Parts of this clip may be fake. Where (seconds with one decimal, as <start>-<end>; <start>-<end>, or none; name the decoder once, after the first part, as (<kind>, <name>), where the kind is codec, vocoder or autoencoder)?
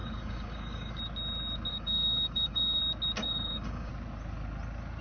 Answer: 0.0-0.9 (codec, DAC); 1.7-2.8; 3.2-3.9